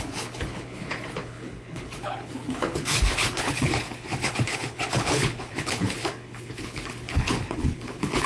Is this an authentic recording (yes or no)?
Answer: no